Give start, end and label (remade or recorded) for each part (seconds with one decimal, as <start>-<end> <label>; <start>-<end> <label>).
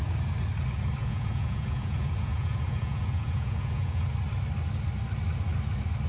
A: 0.0-1.0 recorded; 1.0-4.1 remade; 4.1-6.1 recorded